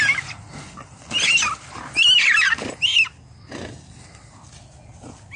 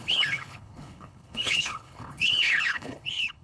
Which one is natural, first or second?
first